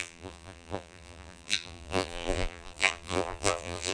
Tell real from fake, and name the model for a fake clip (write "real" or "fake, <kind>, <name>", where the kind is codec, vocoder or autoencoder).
fake, vocoder, BigVGAN v2